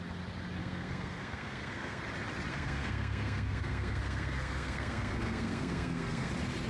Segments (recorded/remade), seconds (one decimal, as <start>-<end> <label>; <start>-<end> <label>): 0.0-0.6 recorded; 0.6-2.0 remade; 2.0-2.5 recorded; 2.5-6.3 remade; 6.3-6.7 recorded